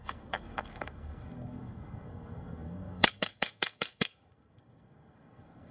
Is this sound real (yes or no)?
no